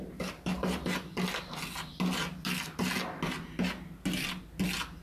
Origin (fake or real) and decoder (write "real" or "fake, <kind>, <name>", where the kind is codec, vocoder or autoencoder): real